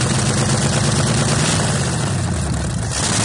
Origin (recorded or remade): recorded